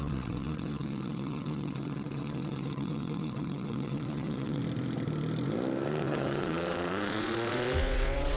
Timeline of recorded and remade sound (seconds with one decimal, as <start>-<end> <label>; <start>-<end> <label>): 0.0-4.6 remade; 4.6-6.0 recorded; 6.0-8.4 remade